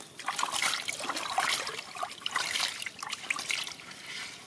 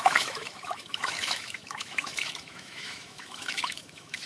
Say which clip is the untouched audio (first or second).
first